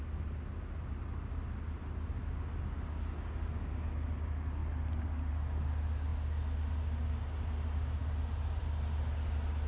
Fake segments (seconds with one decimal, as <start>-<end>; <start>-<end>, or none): none